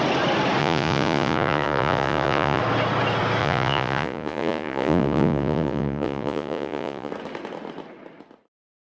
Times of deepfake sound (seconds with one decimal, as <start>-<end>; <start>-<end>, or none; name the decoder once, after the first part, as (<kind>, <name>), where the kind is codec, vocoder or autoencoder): 0.6-2.6 (vocoder, Vocos); 3.4-7.1